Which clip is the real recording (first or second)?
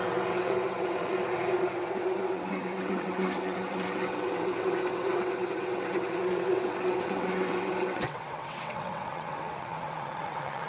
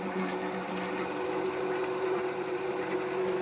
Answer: second